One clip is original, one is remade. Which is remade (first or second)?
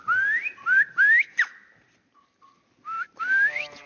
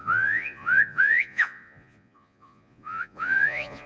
second